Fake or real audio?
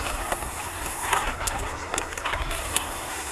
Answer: fake